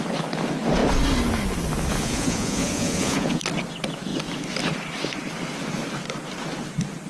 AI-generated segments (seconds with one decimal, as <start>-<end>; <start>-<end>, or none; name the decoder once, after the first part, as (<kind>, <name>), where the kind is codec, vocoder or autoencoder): 1.9-3.4 (vocoder, Vocos)